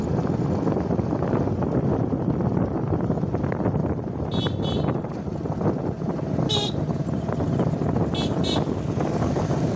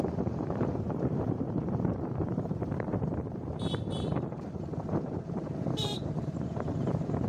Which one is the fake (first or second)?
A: second